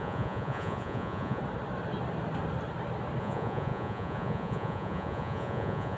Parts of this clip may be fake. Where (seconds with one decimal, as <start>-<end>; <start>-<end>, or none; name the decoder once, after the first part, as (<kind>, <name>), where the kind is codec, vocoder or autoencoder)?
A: 0.0-1.4 (vocoder, Vocos); 3.2-6.0